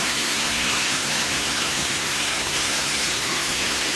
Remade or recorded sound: remade